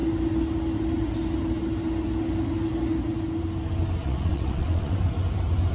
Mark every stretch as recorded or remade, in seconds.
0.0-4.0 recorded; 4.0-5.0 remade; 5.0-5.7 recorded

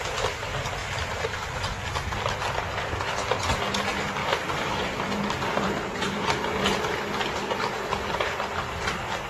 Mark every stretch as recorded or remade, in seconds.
0.0-0.8 recorded; 0.8-1.8 remade; 1.8-4.2 recorded; 4.2-7.2 remade; 7.2-9.3 recorded

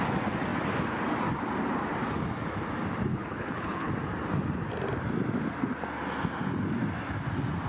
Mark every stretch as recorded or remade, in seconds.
0.0-3.1 recorded; 3.1-3.9 remade; 3.9-7.7 recorded